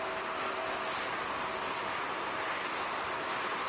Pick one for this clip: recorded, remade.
recorded